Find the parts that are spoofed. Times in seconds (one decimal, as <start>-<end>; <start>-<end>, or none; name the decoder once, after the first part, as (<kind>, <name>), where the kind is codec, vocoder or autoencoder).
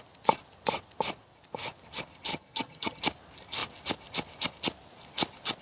2.3-3.0 (vocoder, HiFi-GAN)